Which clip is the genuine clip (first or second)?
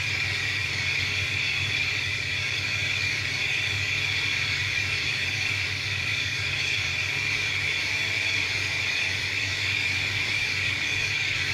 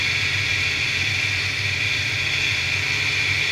second